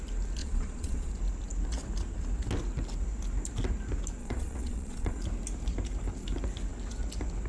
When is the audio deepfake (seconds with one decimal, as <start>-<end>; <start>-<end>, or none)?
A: 0.4-1.1; 4.2-5.2